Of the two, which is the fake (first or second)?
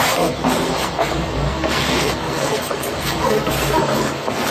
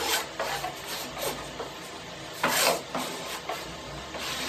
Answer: first